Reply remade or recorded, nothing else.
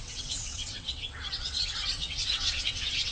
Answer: remade